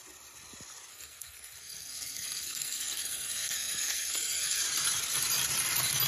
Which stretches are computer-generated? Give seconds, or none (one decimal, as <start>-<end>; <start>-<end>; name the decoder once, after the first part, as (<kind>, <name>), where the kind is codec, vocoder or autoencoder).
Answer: 0.9-4.6 (codec, SNAC)